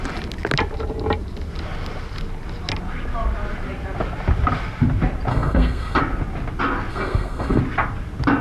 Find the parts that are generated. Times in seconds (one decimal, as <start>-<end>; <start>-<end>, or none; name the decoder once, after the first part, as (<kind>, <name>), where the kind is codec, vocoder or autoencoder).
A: 5.3-6.0 (codec, SNAC); 6.9-7.6